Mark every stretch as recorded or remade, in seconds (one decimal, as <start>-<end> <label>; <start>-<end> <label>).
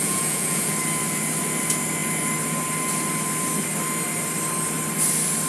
0.0-0.7 remade; 0.7-5.5 recorded